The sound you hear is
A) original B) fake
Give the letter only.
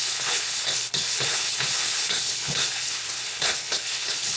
B